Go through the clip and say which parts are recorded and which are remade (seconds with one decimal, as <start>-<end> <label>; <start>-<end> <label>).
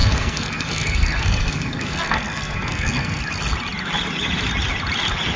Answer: 0.0-3.2 remade; 3.2-5.4 recorded